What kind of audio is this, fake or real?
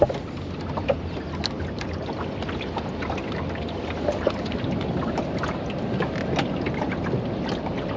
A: real